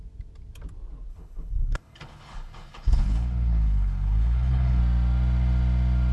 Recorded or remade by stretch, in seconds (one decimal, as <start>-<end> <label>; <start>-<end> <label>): 0.0-1.1 recorded; 1.1-4.8 remade; 4.8-6.1 recorded